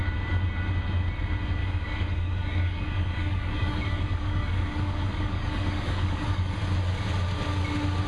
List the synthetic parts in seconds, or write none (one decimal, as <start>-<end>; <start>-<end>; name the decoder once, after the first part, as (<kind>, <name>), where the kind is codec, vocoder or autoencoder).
1.6-6.5 (codec, DAC)